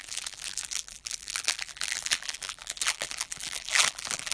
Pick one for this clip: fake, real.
fake